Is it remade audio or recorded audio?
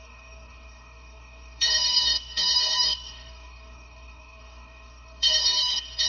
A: remade